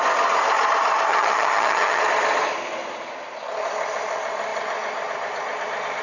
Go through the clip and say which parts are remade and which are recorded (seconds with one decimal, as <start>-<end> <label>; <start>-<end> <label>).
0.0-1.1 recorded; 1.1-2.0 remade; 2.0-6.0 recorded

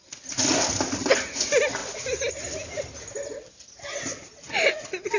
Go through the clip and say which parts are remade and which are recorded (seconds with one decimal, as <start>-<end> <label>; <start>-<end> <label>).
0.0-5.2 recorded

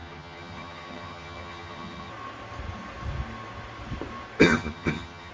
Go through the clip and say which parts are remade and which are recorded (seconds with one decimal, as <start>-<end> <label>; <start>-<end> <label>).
0.0-2.1 remade; 2.1-4.4 recorded; 4.4-5.3 remade

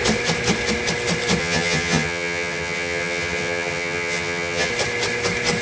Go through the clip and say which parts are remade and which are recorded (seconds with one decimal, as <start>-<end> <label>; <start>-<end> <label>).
0.0-1.4 recorded; 1.4-4.7 remade; 4.7-5.6 recorded